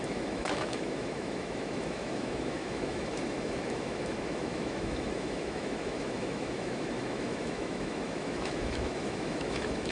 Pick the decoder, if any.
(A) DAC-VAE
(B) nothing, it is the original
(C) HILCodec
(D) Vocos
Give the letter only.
A